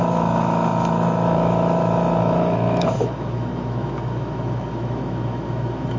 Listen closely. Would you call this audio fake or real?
fake